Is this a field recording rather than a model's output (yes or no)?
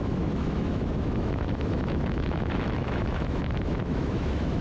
no